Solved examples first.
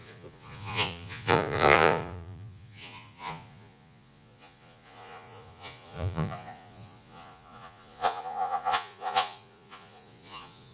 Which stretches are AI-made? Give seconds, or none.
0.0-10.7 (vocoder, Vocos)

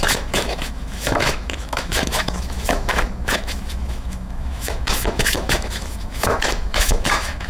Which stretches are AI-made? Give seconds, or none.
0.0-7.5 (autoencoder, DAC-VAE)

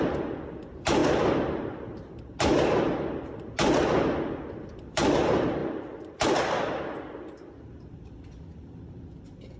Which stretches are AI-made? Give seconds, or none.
0.0-1.0 (vocoder, BigVGAN v2); 4.2-9.6